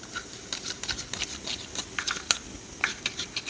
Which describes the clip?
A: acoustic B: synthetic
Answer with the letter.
A